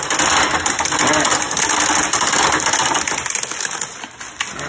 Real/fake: real